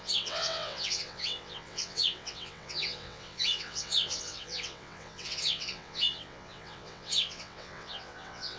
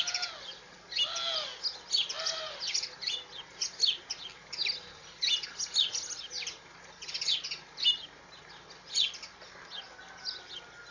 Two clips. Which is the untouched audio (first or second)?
second